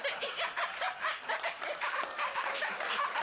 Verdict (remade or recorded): recorded